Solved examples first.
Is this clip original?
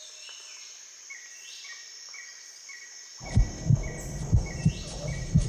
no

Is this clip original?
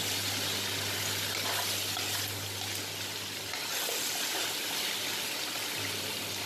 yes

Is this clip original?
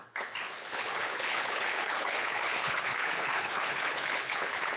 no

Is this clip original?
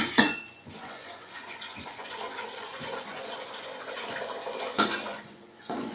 no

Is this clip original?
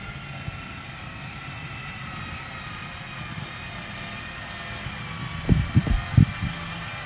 yes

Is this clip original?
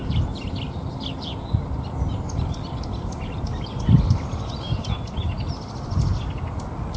yes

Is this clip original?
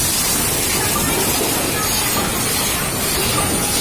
yes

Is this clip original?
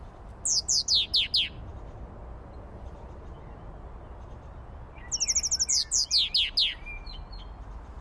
yes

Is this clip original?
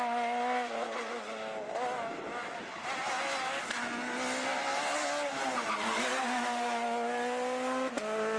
yes